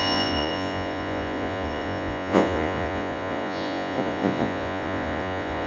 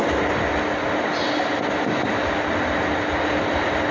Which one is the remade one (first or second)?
first